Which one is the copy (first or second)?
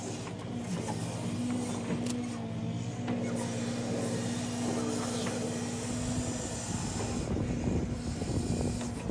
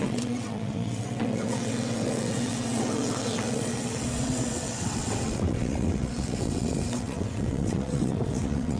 second